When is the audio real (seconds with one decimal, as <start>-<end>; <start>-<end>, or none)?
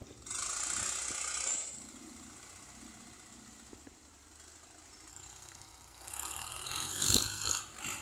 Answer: 0.0-5.1; 7.6-8.0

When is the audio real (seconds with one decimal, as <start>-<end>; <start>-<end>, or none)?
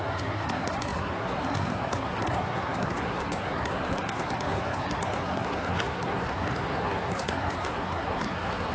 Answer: none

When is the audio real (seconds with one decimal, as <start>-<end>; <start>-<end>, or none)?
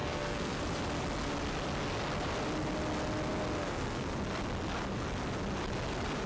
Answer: 0.6-3.6; 4.1-6.3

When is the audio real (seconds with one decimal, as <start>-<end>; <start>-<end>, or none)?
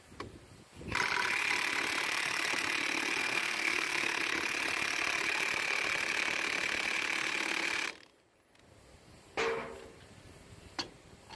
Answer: 0.0-3.2; 4.2-11.4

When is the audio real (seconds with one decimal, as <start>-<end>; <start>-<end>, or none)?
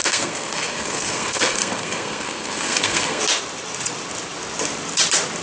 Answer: 3.2-5.4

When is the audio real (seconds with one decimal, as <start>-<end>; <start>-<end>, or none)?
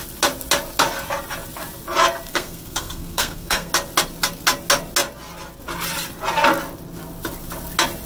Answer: 0.0-2.3; 3.7-8.1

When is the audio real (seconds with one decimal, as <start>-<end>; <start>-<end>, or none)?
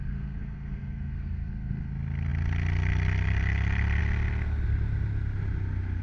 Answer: 1.9-6.0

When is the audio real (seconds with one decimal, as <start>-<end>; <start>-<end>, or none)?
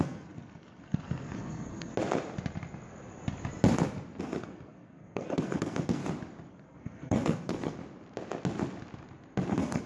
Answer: 1.9-4.2; 6.0-6.5; 7.8-9.5